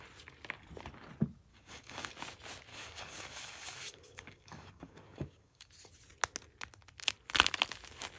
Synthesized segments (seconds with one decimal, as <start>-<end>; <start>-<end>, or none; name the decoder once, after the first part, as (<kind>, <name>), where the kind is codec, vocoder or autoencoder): 1.5-2.1 (codec, DAC); 2.7-5.7